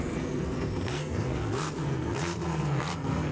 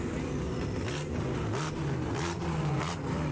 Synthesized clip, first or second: first